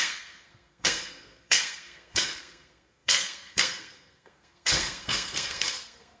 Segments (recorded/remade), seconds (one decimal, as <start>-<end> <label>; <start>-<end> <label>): 0.0-6.2 remade